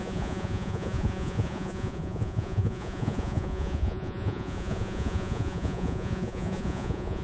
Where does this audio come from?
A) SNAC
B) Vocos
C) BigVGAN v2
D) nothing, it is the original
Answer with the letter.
B